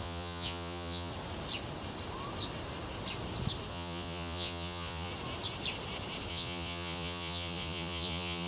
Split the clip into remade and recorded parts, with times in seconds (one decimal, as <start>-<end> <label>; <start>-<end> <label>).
0.0-1.1 remade; 1.1-3.7 recorded; 3.7-5.1 remade; 5.1-6.3 recorded; 6.3-8.5 remade